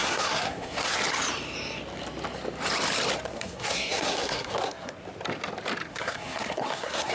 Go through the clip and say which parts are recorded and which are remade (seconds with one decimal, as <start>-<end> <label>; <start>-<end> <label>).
0.0-1.0 remade; 1.0-3.3 recorded; 3.3-4.9 remade; 4.9-5.9 recorded; 5.9-7.1 remade